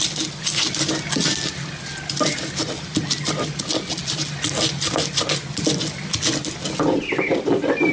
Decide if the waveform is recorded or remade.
recorded